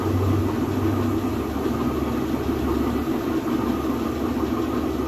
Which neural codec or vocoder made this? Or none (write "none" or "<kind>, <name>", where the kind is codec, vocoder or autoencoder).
none